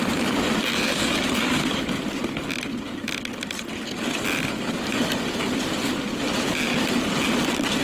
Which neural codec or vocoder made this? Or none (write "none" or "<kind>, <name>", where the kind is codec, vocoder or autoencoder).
none